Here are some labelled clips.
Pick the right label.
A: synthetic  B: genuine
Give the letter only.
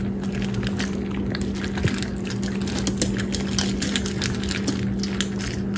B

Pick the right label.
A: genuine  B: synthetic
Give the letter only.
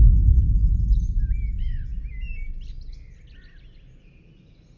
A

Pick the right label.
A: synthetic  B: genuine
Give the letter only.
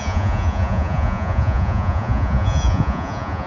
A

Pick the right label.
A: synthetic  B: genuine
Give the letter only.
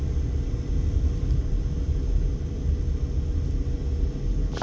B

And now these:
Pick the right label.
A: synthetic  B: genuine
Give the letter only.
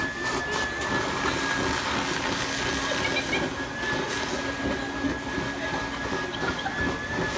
B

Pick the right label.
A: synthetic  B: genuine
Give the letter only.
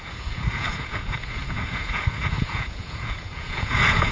A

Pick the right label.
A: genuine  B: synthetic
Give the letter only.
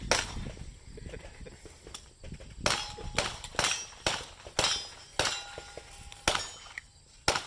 A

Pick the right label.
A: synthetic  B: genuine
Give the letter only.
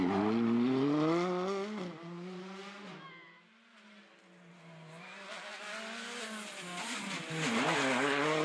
B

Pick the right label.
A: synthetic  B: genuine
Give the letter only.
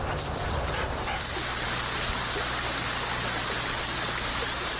B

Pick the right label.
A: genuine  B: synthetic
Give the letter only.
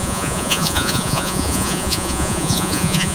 B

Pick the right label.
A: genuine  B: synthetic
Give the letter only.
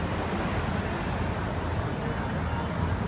A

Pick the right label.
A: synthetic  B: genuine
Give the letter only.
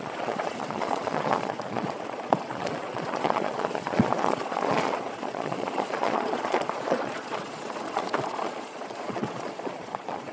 A